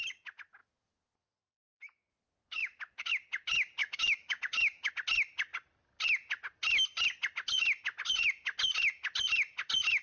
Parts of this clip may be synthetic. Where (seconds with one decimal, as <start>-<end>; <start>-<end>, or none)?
0.6-3.1; 3.8-4.9